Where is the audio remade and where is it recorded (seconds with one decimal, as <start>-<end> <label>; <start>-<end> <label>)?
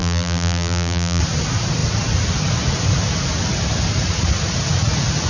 0.0-1.2 remade; 1.2-5.3 recorded